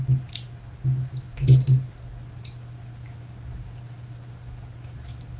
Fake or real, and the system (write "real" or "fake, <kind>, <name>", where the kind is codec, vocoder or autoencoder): real